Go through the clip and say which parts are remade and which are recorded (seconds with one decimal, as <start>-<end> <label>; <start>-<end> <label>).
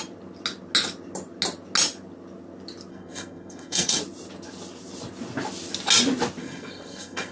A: 0.0-2.9 recorded; 2.9-4.0 remade; 4.0-6.4 recorded; 6.4-7.3 remade